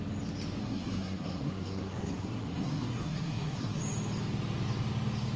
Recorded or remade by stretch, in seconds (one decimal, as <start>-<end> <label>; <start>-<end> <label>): 0.0-0.6 recorded; 0.6-3.8 remade; 3.8-5.4 recorded